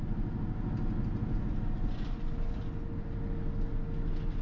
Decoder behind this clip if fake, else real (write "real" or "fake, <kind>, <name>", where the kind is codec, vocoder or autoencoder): real